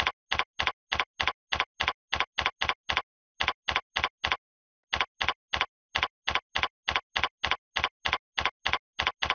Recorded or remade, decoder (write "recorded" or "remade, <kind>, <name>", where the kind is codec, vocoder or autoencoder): recorded